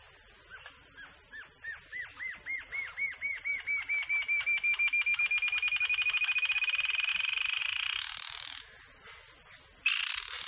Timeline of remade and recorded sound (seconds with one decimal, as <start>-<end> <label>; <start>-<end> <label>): 0.0-10.5 recorded